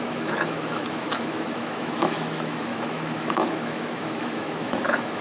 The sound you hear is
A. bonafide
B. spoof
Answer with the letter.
B